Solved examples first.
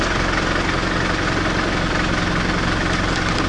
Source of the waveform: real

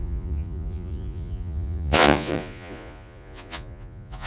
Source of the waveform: fake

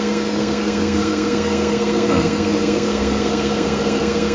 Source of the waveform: fake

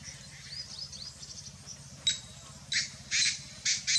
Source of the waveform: real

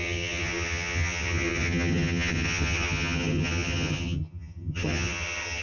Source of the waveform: fake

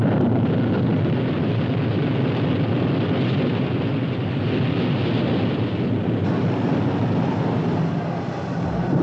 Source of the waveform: real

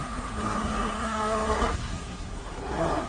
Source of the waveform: fake